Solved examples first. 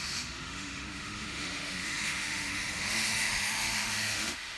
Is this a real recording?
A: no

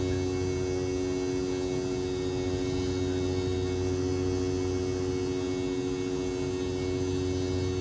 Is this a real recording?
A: yes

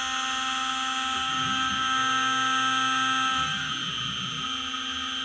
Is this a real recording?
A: yes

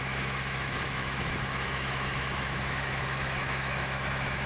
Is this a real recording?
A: no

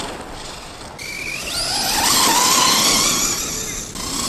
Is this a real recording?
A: yes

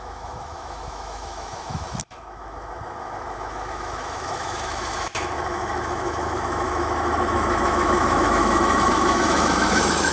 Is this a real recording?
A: no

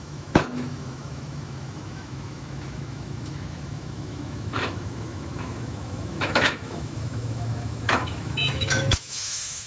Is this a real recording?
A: no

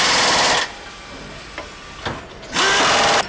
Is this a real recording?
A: yes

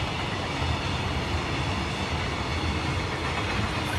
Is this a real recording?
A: yes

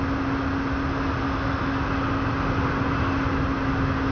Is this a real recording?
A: yes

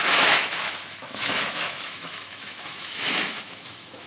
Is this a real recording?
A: no